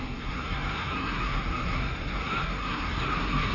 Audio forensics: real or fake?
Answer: fake